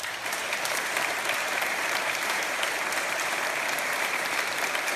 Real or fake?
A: fake